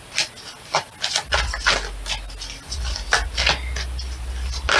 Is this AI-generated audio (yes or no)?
no